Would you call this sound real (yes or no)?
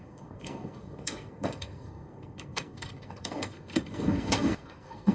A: no